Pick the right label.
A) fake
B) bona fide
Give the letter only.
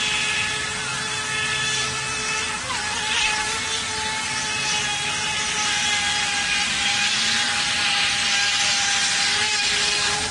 B